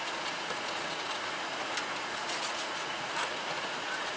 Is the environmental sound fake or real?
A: fake